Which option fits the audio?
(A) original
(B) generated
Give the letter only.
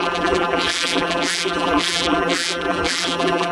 B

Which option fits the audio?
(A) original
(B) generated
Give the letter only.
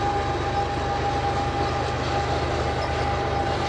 A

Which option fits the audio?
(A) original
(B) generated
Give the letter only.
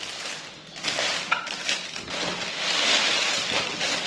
A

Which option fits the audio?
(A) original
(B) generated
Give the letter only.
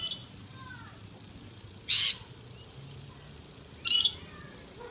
A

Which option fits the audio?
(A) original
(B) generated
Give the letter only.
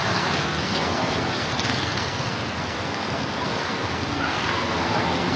B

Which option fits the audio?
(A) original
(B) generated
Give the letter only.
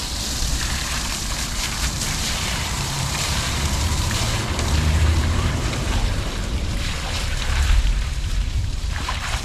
B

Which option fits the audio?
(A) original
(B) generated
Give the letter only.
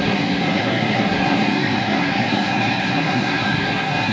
B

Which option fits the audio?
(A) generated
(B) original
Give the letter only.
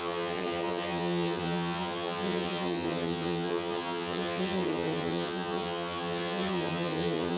A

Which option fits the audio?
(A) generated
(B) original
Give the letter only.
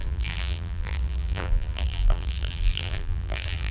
A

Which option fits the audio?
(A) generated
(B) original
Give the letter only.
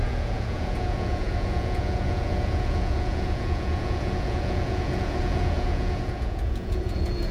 A